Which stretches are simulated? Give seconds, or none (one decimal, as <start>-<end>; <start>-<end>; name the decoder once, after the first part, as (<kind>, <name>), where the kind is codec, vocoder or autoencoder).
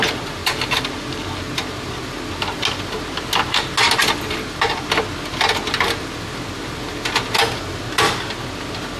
none